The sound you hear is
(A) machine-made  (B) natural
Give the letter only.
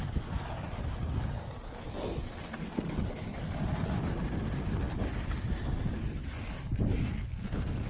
B